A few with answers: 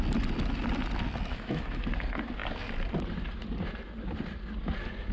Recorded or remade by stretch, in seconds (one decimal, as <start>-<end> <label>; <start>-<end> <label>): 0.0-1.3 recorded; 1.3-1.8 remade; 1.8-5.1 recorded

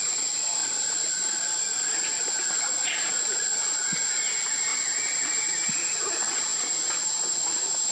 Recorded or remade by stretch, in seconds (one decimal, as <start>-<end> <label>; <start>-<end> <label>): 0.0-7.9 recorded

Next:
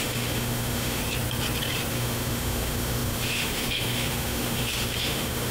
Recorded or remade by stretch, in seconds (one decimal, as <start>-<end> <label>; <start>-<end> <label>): 0.0-1.0 remade; 1.0-1.9 recorded; 1.9-5.5 remade

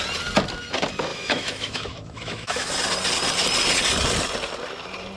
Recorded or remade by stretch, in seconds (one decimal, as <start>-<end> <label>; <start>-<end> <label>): 0.0-1.1 recorded; 1.1-2.7 remade; 2.7-5.2 recorded

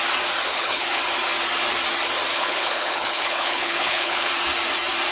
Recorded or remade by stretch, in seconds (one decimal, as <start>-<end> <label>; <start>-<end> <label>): 0.0-0.5 recorded; 0.5-1.0 remade; 1.0-2.3 recorded; 2.3-4.3 remade; 4.3-5.1 recorded

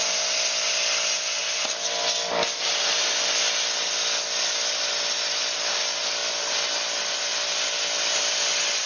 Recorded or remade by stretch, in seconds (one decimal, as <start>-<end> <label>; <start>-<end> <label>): 0.0-8.9 recorded